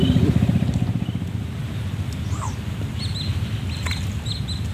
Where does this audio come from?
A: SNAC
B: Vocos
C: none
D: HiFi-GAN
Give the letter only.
C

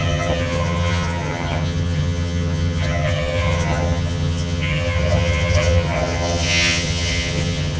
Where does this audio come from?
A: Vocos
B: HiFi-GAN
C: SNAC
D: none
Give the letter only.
B